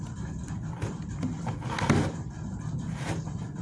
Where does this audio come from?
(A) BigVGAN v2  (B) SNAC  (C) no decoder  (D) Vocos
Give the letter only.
C